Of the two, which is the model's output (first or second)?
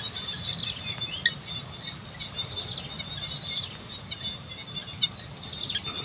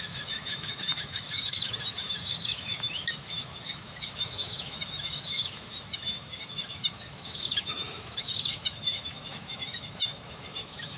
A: second